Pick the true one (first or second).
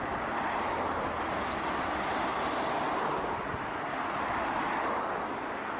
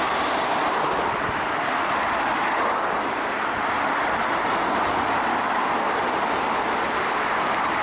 first